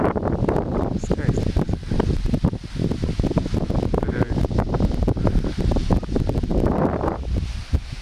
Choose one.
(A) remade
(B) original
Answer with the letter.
A